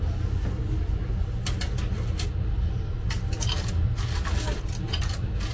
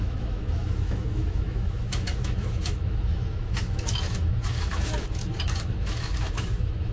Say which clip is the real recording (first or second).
first